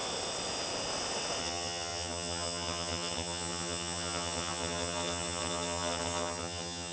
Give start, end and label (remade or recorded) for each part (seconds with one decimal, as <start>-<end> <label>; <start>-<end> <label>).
0.0-1.4 recorded; 1.4-6.9 remade